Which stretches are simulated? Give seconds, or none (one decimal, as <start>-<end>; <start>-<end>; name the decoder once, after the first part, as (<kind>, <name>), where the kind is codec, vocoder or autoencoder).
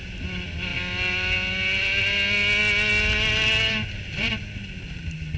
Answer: none